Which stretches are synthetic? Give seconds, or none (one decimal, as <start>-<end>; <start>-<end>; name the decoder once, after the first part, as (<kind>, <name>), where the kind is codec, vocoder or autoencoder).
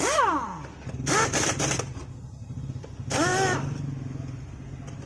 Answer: none